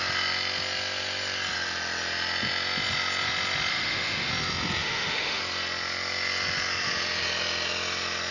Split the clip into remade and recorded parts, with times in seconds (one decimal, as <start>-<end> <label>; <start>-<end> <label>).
0.0-3.7 recorded; 3.7-4.3 remade; 4.3-4.8 recorded; 4.8-5.4 remade; 5.4-8.3 recorded